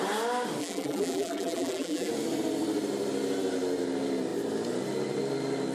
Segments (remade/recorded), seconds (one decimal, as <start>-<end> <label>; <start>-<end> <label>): 0.0-0.6 recorded; 0.6-2.1 remade; 2.1-5.7 recorded